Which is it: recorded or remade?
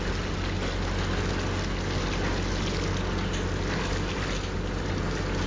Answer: recorded